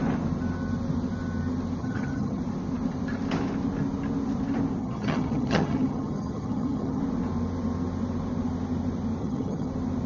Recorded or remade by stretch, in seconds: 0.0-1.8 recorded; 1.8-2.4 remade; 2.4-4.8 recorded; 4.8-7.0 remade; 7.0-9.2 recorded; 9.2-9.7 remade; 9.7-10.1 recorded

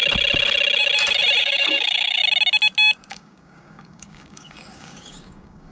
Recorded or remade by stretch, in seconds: 0.0-1.4 recorded; 1.4-2.2 remade; 2.2-3.1 recorded; 3.1-5.7 remade

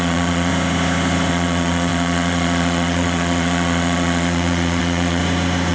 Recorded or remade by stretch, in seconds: 0.0-0.5 remade; 0.5-1.3 recorded; 1.3-5.2 remade; 5.2-5.7 recorded

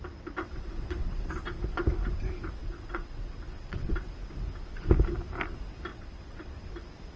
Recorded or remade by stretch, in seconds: 0.0-0.4 recorded; 0.4-1.3 remade; 1.3-2.6 recorded; 2.6-4.1 remade; 4.1-5.9 recorded; 5.9-6.7 remade; 6.7-7.2 recorded

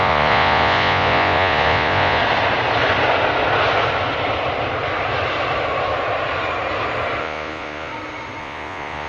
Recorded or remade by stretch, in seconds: 0.0-2.2 remade; 2.2-7.2 recorded; 7.2-7.9 remade; 7.9-8.4 recorded; 8.4-9.1 remade

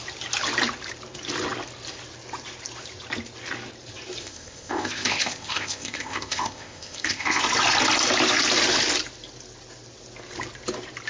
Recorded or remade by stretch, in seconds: 0.0-4.2 recorded; 4.2-7.4 remade; 7.4-11.1 recorded